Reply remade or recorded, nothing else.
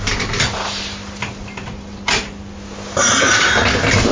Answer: recorded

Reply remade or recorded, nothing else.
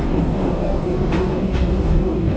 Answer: remade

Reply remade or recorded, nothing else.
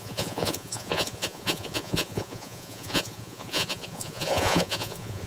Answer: remade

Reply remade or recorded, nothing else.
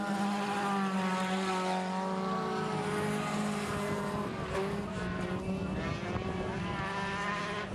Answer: recorded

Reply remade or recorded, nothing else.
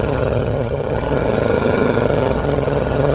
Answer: remade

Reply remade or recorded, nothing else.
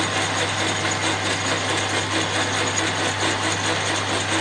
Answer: recorded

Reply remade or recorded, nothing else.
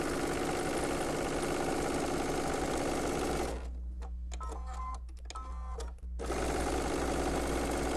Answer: recorded